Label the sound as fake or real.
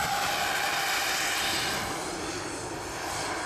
real